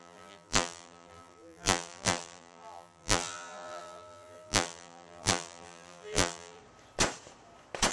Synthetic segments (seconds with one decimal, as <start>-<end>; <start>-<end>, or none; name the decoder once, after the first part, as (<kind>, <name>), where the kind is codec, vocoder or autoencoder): 0.0-6.6 (vocoder, BigVGAN v2)